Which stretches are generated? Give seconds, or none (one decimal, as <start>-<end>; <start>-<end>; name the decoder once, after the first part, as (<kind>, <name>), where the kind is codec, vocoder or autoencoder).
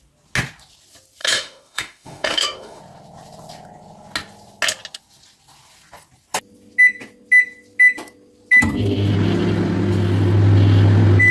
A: 1.2-2.8 (autoencoder, DAC-VAE)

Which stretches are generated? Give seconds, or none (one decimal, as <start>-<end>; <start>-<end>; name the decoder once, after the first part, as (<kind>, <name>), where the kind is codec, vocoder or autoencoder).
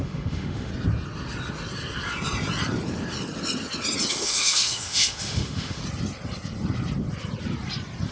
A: 0.0-0.7 (autoencoder, DAC-VAE); 4.1-5.8